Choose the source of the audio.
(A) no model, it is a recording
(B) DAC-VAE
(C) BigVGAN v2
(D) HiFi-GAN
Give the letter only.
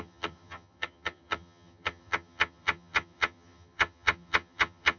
D